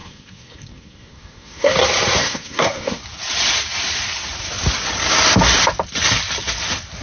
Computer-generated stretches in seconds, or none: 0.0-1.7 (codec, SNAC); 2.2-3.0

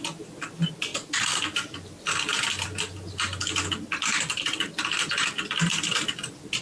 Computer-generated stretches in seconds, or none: none

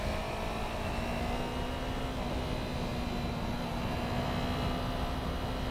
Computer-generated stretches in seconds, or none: none

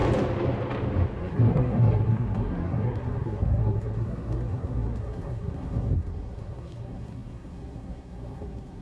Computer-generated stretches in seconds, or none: 1.2-8.8 (codec, SNAC)

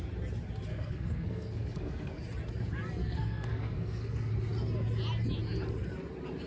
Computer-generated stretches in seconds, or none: 0.7-2.2 (codec, SNAC); 3.0-4.3

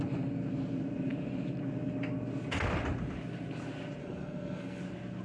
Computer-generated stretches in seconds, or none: 4.0-4.8 (codec, SNAC)

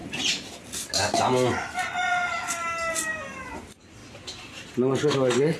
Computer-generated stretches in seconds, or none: none